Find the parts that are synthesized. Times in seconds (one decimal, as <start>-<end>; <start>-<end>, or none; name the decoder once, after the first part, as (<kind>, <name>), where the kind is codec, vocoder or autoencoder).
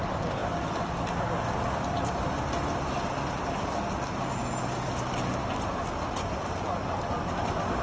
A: none